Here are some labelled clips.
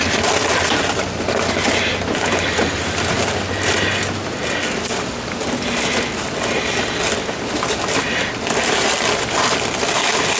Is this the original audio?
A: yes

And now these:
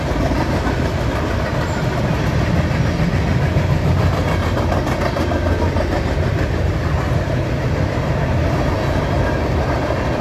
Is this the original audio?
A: yes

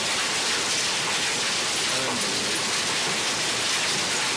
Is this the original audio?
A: yes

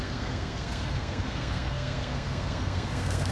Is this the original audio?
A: no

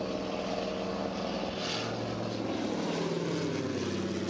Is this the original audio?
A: yes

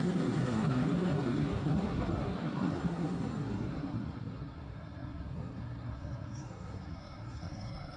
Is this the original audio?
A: no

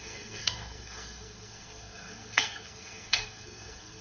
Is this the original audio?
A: no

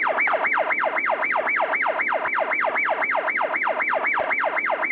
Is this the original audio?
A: yes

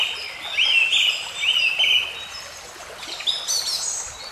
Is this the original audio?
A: yes